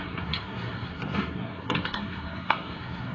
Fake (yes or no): yes